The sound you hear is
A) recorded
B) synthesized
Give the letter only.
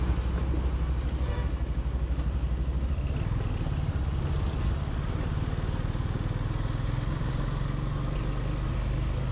A